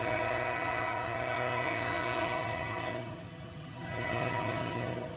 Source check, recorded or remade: remade